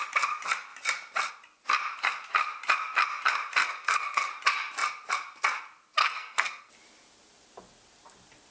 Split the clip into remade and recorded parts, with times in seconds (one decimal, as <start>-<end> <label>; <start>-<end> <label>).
0.0-3.6 recorded; 3.6-4.3 remade; 4.3-6.0 recorded; 6.0-6.7 remade; 6.7-8.5 recorded